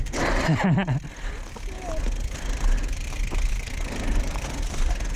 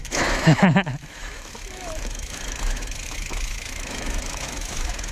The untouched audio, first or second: first